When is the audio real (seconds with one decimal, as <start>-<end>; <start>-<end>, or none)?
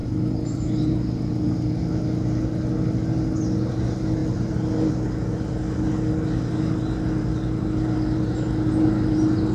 0.0-4.2; 4.9-9.5